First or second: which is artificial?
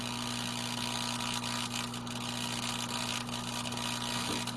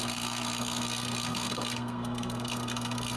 second